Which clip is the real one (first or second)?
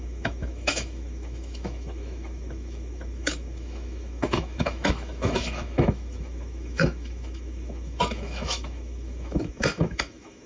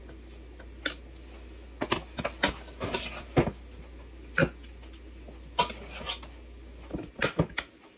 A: second